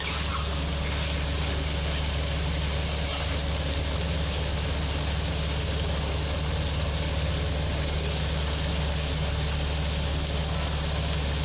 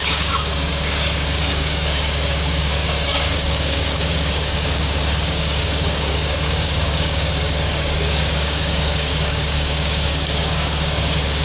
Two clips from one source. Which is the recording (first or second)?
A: first